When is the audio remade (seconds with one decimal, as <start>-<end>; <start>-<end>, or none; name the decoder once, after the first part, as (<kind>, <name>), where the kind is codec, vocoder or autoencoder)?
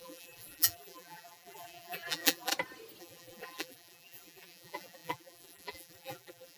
0.0-2.5 (vocoder, BigVGAN v2); 3.0-6.6